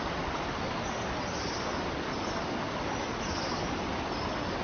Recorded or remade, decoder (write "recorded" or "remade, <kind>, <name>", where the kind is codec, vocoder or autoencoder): recorded